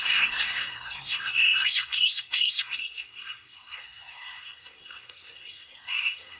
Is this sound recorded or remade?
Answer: remade